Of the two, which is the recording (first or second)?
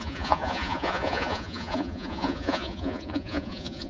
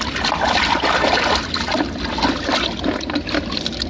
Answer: second